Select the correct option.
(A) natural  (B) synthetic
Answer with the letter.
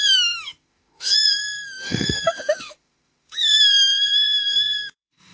B